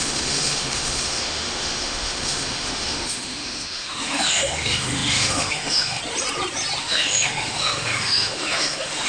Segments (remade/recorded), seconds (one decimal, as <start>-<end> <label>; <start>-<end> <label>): 0.0-6.0 remade; 6.0-6.8 recorded; 6.8-9.1 remade